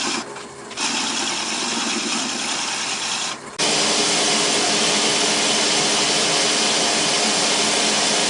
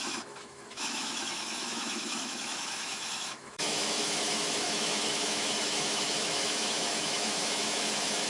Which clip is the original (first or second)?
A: first